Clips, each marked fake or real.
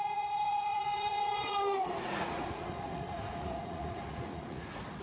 fake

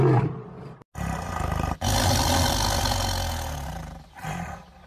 real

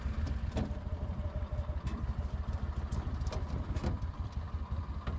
real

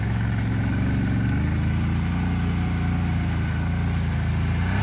real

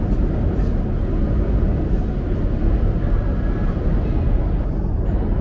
real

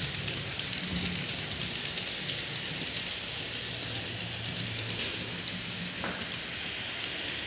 real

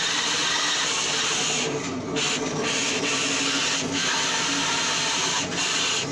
real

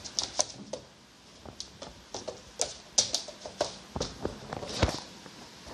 real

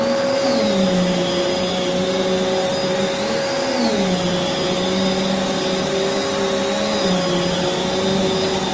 real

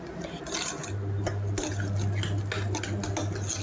real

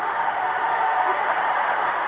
fake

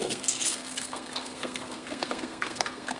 fake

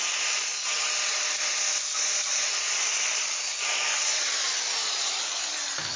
real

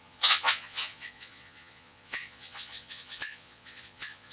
fake